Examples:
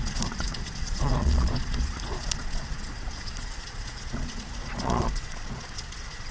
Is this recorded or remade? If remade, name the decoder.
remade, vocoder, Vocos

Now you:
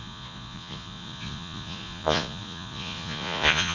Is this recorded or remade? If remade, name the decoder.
remade, vocoder, Vocos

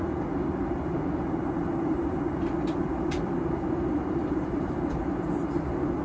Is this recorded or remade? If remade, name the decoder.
recorded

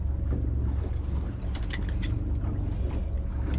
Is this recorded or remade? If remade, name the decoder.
recorded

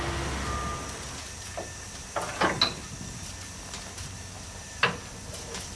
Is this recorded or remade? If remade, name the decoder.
recorded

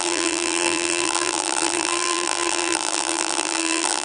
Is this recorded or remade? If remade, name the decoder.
remade, vocoder, BigVGAN v2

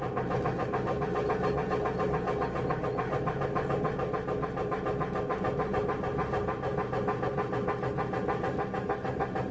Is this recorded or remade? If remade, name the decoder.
recorded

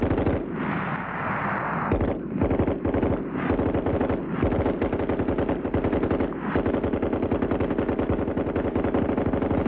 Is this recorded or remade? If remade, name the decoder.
recorded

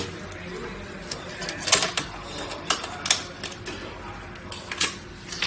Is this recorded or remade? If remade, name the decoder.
recorded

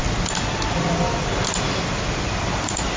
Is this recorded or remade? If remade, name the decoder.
recorded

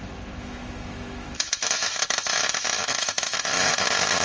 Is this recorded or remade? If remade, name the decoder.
remade, autoencoder, DAC-VAE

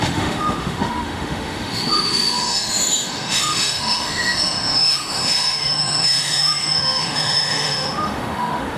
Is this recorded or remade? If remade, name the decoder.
remade, autoencoder, DAC-VAE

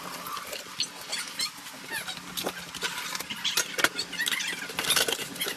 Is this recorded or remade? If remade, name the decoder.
recorded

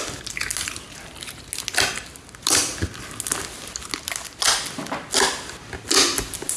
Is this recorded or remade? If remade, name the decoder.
recorded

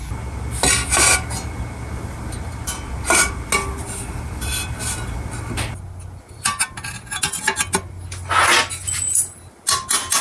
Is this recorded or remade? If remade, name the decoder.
recorded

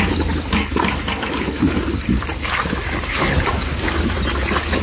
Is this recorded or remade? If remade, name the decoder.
recorded